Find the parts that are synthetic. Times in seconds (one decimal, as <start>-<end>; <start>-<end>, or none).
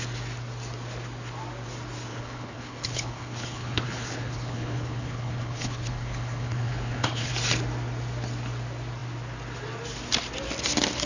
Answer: 2.1-7.3